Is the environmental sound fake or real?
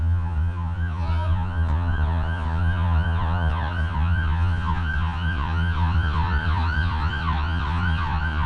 fake